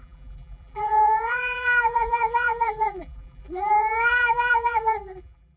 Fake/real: fake